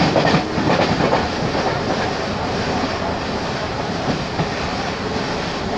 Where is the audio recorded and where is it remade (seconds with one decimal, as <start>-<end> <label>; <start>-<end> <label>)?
0.0-3.6 recorded; 3.6-5.1 remade; 5.1-5.8 recorded